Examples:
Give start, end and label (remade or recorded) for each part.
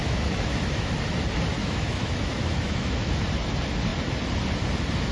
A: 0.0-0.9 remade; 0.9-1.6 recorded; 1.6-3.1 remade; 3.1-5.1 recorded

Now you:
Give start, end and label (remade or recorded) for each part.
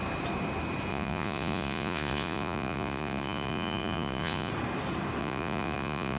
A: 0.0-0.9 recorded; 0.9-4.5 remade; 4.5-5.2 recorded; 5.2-6.2 remade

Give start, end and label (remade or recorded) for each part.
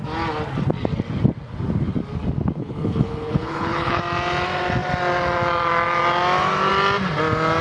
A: 0.0-2.6 recorded; 2.6-4.0 remade; 4.0-7.6 recorded